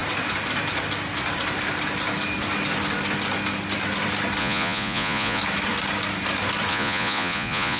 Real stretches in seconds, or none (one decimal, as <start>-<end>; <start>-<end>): 0.0-4.4; 5.4-6.7